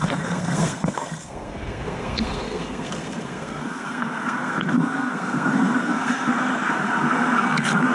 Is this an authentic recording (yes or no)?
no